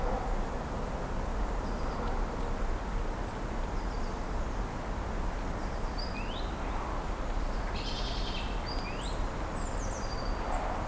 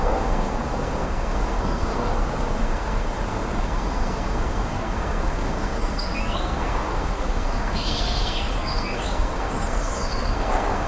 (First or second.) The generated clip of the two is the second